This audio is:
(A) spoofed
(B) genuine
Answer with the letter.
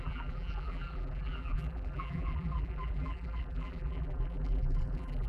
A